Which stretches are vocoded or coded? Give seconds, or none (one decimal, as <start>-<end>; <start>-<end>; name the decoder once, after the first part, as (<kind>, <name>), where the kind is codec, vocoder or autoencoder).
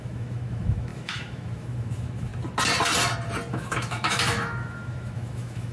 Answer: 0.0-2.3 (autoencoder, DAC-VAE); 3.5-5.7